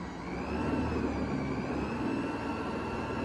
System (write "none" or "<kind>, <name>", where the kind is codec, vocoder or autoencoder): none